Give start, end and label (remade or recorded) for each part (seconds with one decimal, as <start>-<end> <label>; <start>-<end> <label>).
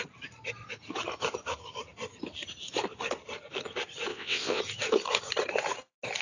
0.0-4.1 recorded; 4.1-4.6 remade; 4.6-6.2 recorded